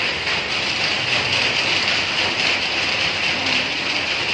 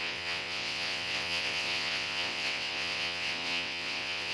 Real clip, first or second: first